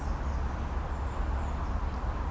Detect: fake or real real